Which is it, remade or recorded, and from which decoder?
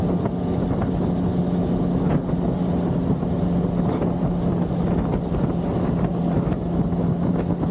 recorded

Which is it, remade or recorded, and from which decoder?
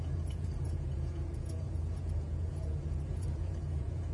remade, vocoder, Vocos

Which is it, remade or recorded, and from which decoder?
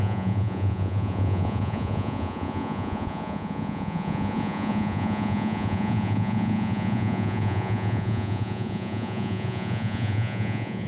remade, vocoder, Vocos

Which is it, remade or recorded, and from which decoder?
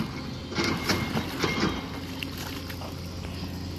recorded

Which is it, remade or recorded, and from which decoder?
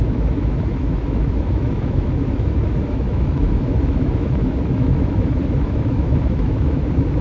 remade, autoencoder, DAC-VAE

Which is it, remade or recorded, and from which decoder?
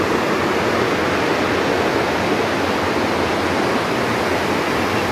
recorded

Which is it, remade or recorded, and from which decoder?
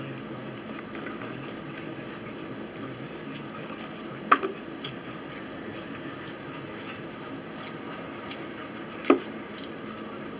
recorded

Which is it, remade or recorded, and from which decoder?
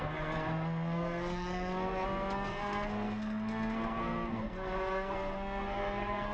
remade, codec, SNAC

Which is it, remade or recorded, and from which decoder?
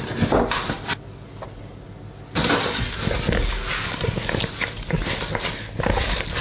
recorded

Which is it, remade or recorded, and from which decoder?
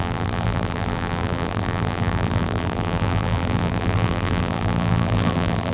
remade, vocoder, BigVGAN v2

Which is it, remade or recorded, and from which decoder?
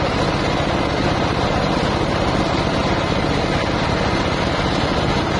recorded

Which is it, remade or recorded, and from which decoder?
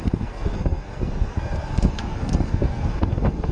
remade, codec, SNAC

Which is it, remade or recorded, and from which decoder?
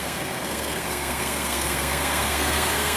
remade, codec, SNAC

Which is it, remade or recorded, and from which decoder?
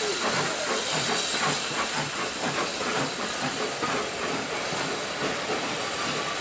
recorded